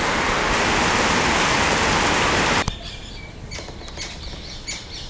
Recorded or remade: remade